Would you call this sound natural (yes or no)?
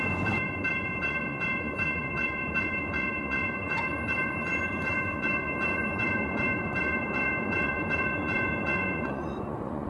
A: no